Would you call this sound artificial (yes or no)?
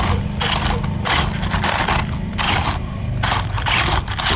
no